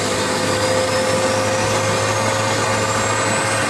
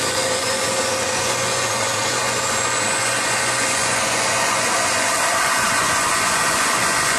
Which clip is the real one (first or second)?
first